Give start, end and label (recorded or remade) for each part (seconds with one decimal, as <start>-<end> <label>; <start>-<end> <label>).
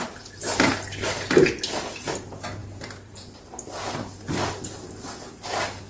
0.0-2.6 recorded; 2.6-4.1 remade; 4.1-5.9 recorded